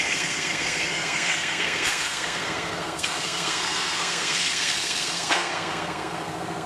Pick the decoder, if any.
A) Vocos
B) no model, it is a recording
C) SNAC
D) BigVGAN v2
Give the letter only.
C